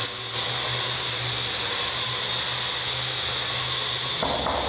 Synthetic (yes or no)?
no